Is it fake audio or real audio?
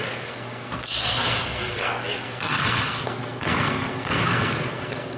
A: fake